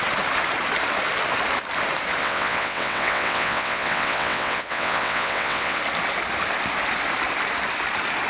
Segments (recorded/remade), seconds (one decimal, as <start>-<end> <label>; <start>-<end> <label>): 0.0-2.2 recorded; 2.2-5.8 remade; 5.8-8.3 recorded

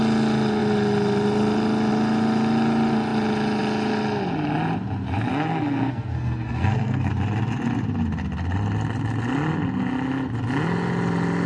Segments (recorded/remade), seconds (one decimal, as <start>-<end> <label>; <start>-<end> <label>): 0.0-5.3 recorded; 5.3-7.1 remade; 7.1-11.5 recorded